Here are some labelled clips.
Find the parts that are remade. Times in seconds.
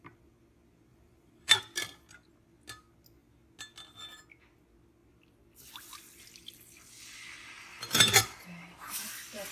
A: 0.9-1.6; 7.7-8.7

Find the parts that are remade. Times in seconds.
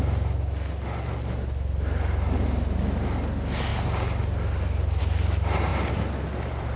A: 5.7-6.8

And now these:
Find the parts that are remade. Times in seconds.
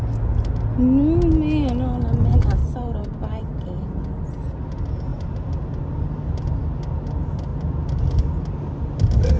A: 2.6-3.4